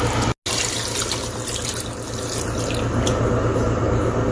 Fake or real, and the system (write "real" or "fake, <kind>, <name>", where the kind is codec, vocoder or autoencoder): real